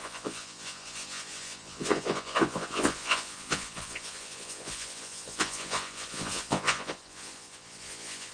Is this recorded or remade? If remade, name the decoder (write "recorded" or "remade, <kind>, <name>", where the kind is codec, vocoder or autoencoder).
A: remade, vocoder, Vocos